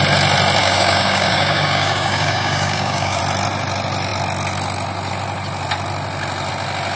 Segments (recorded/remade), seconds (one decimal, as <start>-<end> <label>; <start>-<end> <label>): 0.0-0.6 recorded; 0.6-3.2 remade; 3.2-7.0 recorded